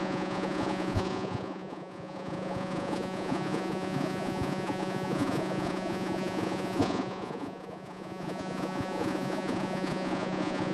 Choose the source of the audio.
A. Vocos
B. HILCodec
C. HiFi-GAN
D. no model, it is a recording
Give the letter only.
A